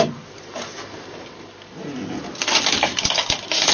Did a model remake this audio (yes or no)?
no